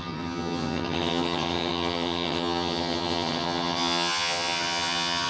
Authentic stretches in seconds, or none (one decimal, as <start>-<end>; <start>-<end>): none